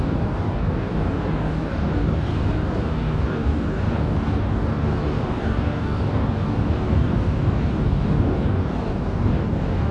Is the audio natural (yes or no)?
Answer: no